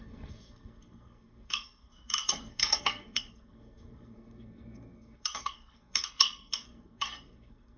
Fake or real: fake